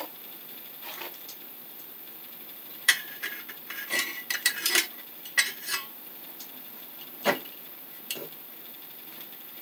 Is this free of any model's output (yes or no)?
no